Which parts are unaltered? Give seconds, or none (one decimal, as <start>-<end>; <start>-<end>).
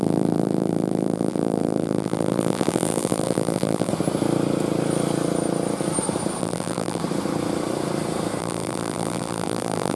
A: 3.9-6.4; 7.0-8.4